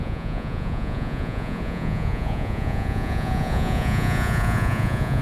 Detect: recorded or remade remade